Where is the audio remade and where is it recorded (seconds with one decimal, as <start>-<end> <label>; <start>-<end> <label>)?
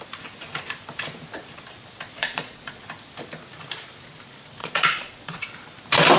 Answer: 0.0-2.2 recorded; 2.2-2.8 remade; 2.8-4.6 recorded; 4.6-5.4 remade; 5.4-6.2 recorded